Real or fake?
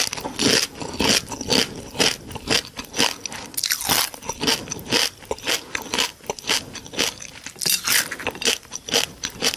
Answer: real